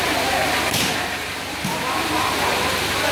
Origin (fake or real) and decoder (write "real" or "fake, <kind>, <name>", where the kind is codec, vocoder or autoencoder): real